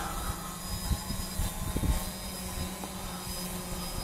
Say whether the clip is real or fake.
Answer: real